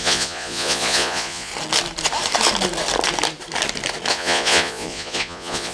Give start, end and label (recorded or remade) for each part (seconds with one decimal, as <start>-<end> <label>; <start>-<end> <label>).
0.0-1.5 remade; 1.5-4.1 recorded; 4.1-5.7 remade